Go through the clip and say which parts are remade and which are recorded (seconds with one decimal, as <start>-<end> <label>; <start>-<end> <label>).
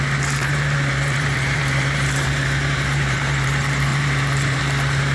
0.0-0.4 recorded; 0.4-3.5 remade; 3.5-3.9 recorded; 3.9-4.6 remade; 4.6-5.1 recorded